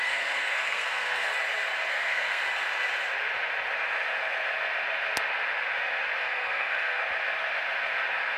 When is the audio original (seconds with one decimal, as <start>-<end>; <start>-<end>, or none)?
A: 1.3-1.9; 2.4-6.2; 7.0-8.4